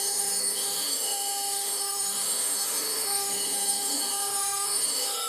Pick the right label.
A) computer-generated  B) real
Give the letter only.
A